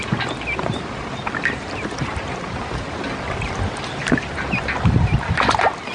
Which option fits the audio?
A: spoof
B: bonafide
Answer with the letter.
B